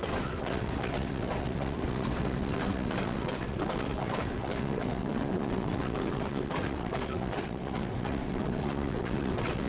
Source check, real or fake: fake